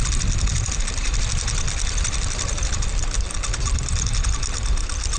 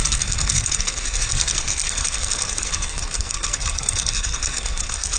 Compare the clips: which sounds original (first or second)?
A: first